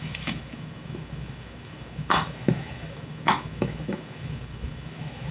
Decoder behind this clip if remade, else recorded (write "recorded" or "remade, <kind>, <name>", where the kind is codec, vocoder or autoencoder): remade, autoencoder, DAC-VAE